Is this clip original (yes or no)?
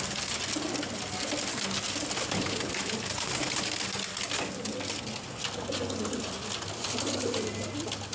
yes